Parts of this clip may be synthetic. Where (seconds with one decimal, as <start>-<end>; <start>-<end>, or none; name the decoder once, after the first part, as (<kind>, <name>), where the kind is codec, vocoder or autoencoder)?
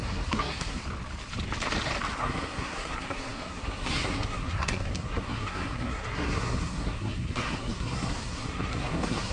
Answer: 0.0-0.8 (codec, SNAC); 2.2-9.3